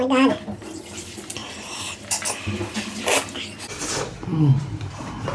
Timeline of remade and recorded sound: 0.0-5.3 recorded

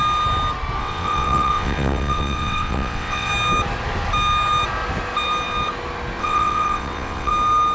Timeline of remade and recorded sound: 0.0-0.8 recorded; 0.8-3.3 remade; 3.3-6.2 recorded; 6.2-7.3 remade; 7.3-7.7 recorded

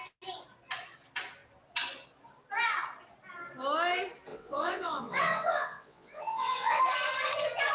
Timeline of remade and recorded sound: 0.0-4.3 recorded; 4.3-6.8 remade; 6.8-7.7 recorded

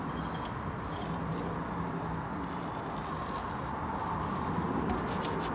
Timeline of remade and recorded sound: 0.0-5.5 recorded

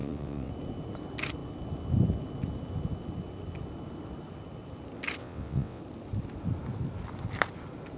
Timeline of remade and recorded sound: 0.0-0.5 remade; 0.5-5.2 recorded; 5.2-5.8 remade; 5.8-8.0 recorded

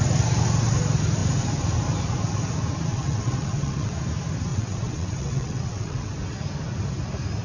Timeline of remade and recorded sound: 0.0-2.9 recorded; 2.9-3.9 remade; 3.9-4.5 recorded; 4.5-6.1 remade; 6.1-7.4 recorded

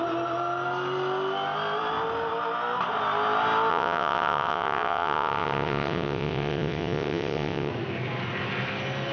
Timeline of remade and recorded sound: 0.0-3.7 recorded; 3.7-7.7 remade; 7.7-9.1 recorded

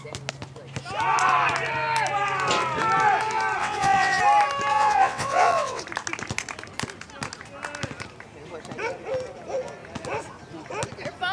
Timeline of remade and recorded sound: 0.0-3.6 recorded; 3.6-4.2 remade; 4.2-4.7 recorded; 4.7-5.8 remade; 5.8-11.3 recorded